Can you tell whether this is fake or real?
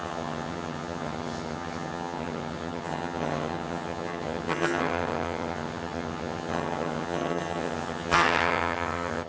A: fake